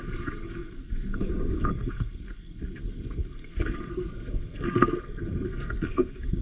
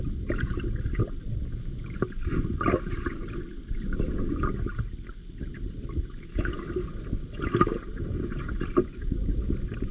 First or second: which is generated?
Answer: first